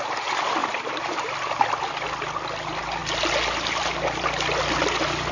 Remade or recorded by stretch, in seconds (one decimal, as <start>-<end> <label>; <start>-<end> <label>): 0.0-5.3 recorded